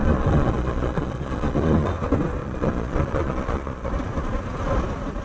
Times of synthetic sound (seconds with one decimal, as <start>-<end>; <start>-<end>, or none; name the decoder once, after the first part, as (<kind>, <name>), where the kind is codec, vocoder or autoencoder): 0.0-1.9 (vocoder, Vocos); 2.4-3.9